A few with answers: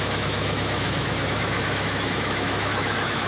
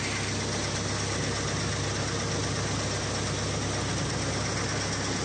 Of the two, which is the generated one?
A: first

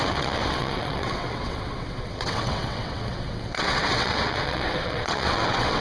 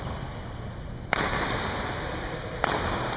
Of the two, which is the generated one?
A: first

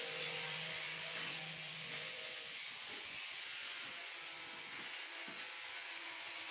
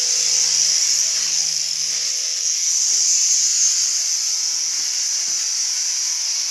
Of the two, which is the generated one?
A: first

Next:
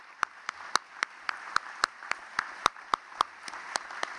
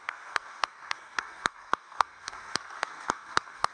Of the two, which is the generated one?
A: second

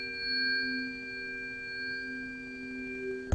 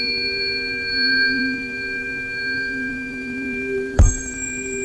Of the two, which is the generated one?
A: second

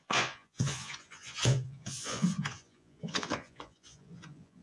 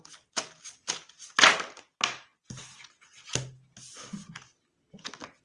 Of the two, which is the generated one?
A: first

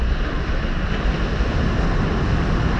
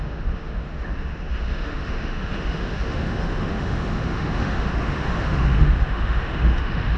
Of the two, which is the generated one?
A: second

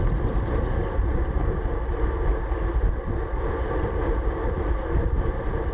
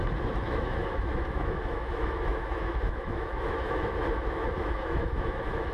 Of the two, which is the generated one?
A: second